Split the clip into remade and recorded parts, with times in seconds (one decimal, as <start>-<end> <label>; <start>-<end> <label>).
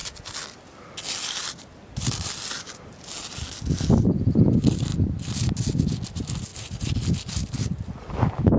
0.0-8.6 recorded